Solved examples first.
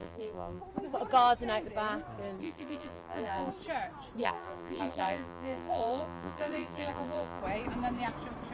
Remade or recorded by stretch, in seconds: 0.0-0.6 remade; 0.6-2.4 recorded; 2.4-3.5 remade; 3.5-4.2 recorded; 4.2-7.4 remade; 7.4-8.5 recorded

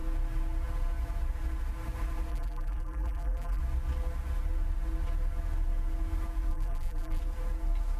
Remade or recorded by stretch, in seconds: 0.0-2.3 recorded; 2.3-3.6 remade; 3.6-6.5 recorded; 6.5-7.2 remade; 7.2-8.0 recorded